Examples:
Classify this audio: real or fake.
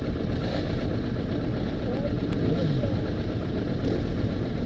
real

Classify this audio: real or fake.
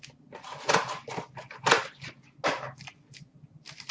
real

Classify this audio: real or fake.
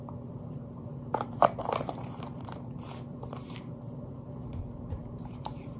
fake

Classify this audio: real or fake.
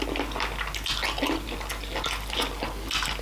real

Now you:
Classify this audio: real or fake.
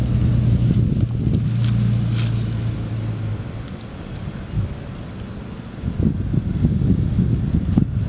real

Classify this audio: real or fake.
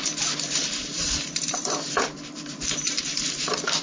fake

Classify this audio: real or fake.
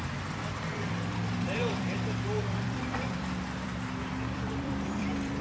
fake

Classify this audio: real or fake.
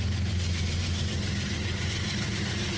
fake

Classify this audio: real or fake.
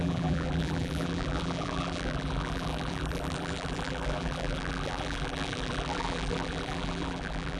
fake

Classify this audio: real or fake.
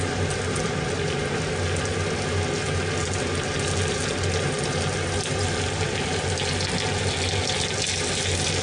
real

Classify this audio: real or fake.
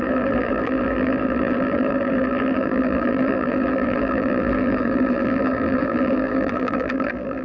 fake